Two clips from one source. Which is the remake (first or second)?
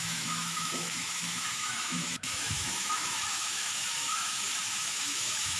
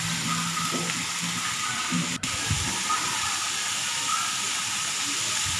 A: first